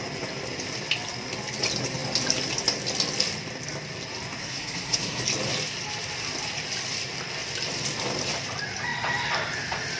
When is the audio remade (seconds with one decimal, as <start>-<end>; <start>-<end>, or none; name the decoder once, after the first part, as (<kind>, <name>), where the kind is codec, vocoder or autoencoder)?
4.4-5.2 (codec, SNAC)